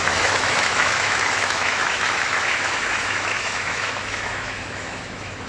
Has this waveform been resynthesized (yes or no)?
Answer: yes